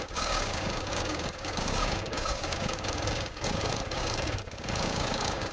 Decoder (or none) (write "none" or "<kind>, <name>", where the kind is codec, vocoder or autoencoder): codec, DAC